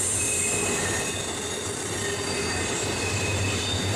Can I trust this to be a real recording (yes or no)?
yes